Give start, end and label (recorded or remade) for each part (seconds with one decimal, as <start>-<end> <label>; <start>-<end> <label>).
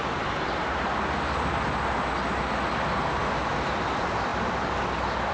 0.0-5.3 recorded